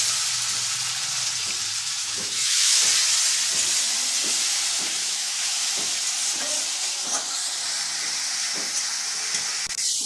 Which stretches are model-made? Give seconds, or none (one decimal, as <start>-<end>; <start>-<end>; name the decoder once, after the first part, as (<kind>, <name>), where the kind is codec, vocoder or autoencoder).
2.0-2.8 (autoencoder, DAC-VAE); 5.0-5.7